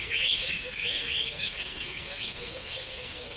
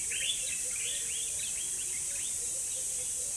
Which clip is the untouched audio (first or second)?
second